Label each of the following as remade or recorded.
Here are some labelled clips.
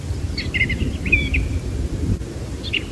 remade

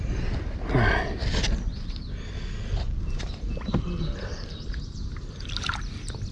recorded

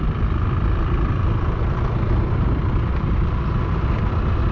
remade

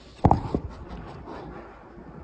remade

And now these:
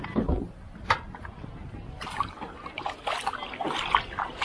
recorded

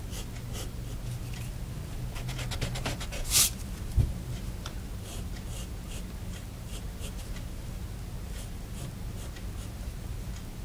recorded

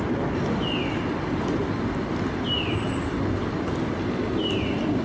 recorded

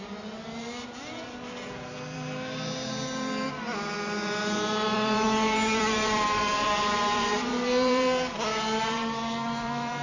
remade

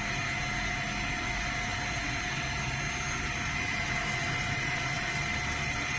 recorded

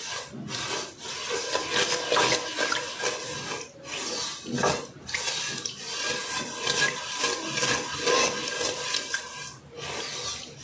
recorded